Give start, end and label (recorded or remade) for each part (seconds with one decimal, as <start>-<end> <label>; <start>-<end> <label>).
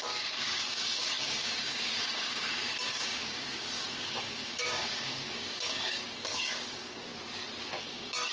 0.0-7.1 remade; 7.1-7.8 recorded; 7.8-8.3 remade